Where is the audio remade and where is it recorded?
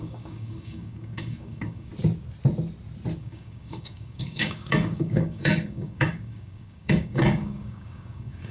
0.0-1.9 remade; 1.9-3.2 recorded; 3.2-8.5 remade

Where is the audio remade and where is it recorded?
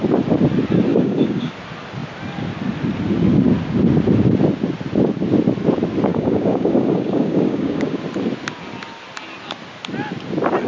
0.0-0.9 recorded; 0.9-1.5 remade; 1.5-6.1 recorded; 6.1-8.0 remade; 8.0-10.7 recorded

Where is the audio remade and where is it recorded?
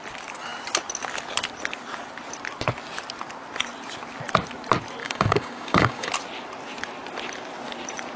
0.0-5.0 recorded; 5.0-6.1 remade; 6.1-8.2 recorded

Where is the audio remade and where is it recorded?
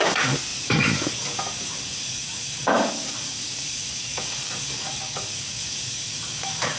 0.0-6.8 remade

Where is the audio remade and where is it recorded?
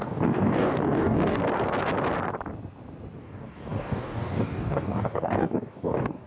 0.0-1.4 remade; 1.4-3.2 recorded; 3.2-6.3 remade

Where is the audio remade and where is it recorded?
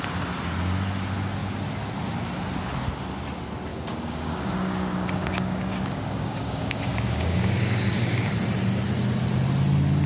0.0-3.7 recorded; 3.7-8.3 remade; 8.3-10.1 recorded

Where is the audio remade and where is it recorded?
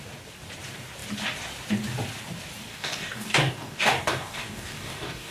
0.0-2.7 recorded; 2.7-5.3 remade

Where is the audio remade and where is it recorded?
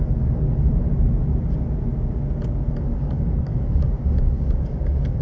0.0-0.9 remade; 0.9-2.7 recorded; 2.7-5.2 remade